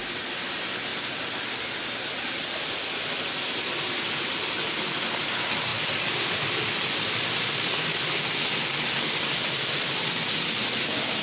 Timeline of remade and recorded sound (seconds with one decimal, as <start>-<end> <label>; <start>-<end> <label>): 0.0-0.9 recorded; 0.9-2.9 remade; 2.9-5.7 recorded; 5.7-10.4 remade; 10.4-11.2 recorded